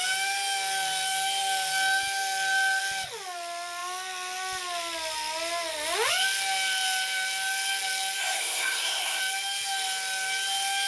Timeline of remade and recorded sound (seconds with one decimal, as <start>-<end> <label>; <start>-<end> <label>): 0.0-8.2 recorded; 8.2-9.2 remade; 9.2-10.9 recorded